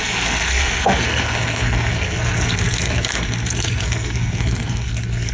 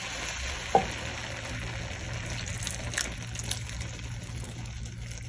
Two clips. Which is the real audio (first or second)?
second